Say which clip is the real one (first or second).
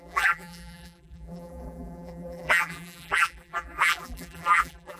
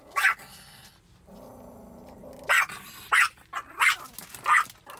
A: second